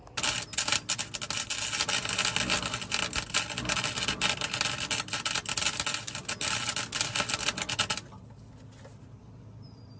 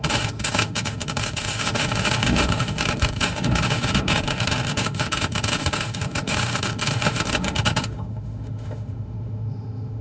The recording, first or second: first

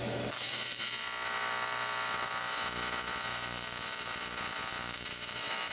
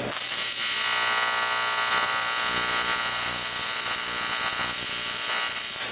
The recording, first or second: second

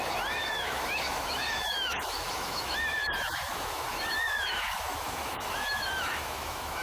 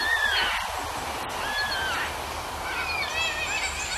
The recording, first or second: second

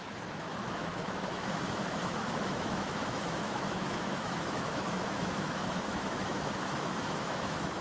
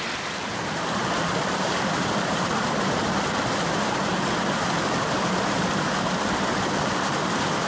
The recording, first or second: second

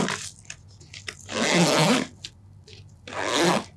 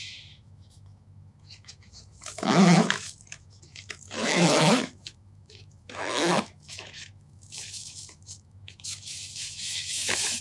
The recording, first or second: first